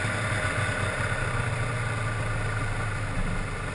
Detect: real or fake real